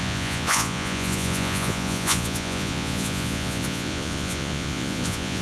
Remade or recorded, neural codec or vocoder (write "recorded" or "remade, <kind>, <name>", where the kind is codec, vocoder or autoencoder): remade, vocoder, Vocos